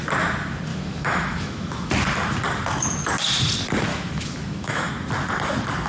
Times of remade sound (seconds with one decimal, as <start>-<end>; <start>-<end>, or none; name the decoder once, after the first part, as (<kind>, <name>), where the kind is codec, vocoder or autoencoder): 0.7-1.9 (autoencoder, DAC-VAE); 3.9-4.9